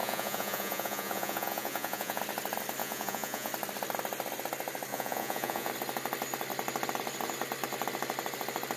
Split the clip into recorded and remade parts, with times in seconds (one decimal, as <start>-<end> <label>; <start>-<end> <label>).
0.0-2.2 remade; 2.2-2.8 recorded; 2.8-3.5 remade; 3.5-4.9 recorded; 4.9-5.7 remade; 5.7-8.8 recorded